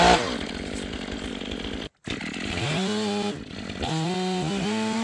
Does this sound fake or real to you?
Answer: real